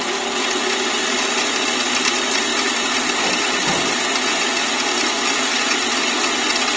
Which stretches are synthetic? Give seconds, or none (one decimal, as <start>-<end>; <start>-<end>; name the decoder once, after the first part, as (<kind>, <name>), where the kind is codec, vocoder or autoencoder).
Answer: 1.1-2.5 (vocoder, BigVGAN v2)